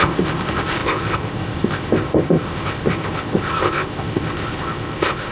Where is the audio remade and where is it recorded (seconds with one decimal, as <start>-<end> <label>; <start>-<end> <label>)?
0.0-5.3 remade